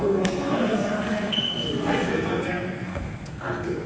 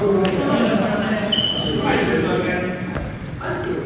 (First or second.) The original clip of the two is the second